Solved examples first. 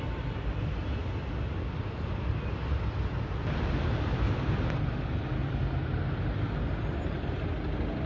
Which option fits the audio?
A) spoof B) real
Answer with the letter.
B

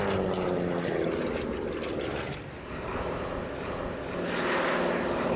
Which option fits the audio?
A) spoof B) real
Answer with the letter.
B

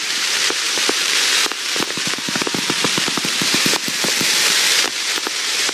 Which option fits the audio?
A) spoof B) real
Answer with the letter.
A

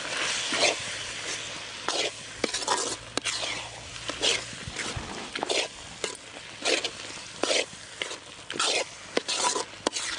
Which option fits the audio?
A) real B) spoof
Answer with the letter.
A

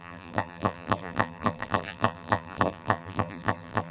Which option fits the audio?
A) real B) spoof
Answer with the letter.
B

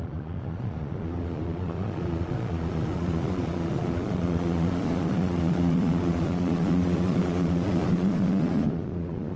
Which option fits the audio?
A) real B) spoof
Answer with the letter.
B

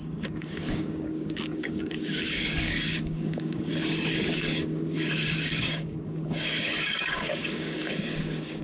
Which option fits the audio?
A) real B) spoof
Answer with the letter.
B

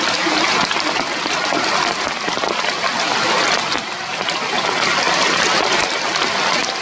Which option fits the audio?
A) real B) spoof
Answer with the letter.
A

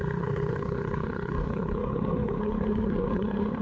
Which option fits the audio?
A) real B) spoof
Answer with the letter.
B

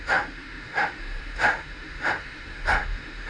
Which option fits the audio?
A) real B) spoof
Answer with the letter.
B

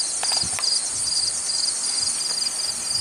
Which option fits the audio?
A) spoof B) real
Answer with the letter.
B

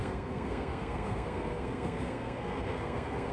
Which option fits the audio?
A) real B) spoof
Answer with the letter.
B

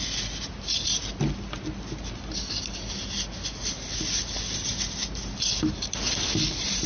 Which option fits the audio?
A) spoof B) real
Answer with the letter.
B